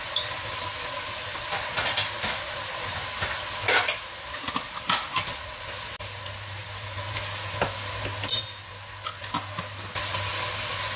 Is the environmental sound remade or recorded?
recorded